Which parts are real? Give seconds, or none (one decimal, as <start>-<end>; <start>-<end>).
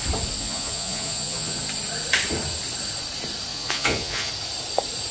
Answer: 0.0-0.4; 1.6-3.5; 4.3-5.1